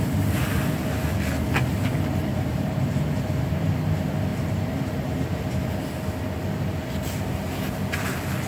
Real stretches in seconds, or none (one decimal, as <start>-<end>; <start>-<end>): 0.0-2.3; 3.8-4.3; 4.9-8.5